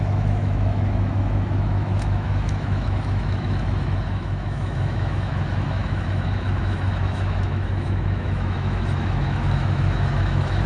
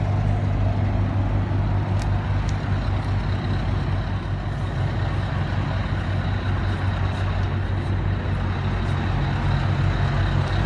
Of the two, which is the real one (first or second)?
second